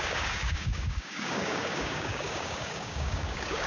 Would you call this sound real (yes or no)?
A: no